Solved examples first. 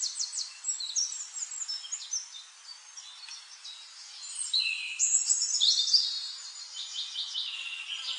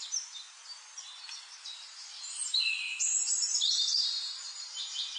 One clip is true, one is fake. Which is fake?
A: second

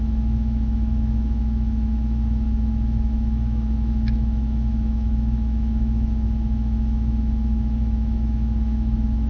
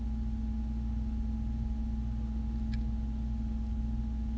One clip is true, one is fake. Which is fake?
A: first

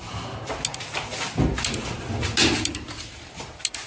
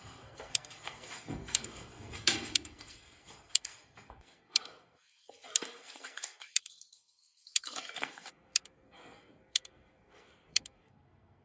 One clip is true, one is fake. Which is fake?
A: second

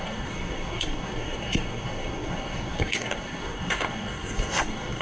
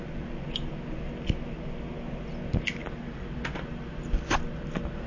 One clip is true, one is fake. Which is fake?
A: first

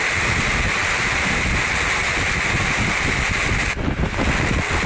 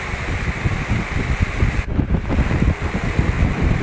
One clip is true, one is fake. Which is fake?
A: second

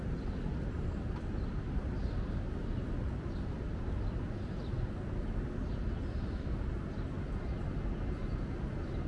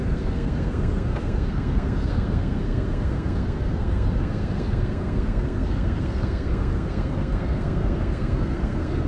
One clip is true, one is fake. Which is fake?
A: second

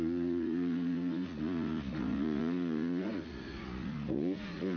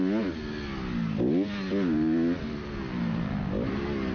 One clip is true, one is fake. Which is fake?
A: first